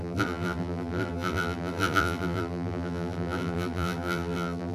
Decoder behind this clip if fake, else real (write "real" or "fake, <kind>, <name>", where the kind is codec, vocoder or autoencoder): fake, vocoder, BigVGAN v2